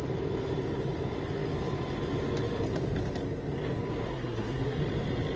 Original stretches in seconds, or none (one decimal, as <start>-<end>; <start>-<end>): 0.0-4.1; 4.8-5.4